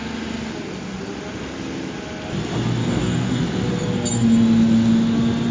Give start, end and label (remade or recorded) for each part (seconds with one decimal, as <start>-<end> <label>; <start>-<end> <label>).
0.0-2.8 recorded; 2.8-3.4 remade; 3.4-5.5 recorded